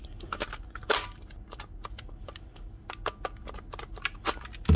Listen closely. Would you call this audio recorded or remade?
recorded